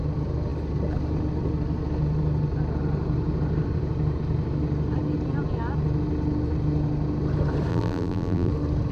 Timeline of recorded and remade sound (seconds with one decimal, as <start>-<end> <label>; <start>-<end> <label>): 0.0-7.7 recorded; 7.7-8.5 remade; 8.5-8.9 recorded